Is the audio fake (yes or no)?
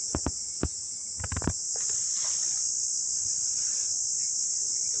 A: no